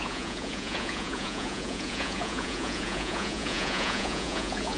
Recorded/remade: remade